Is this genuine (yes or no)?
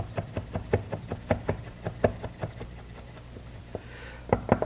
yes